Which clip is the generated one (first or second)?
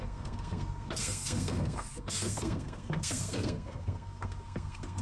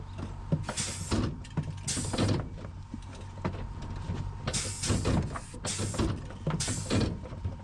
first